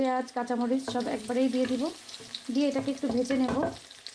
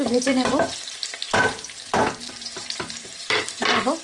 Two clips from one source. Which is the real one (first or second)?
first